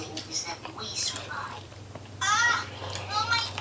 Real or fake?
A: real